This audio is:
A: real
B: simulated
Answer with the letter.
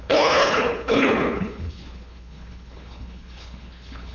B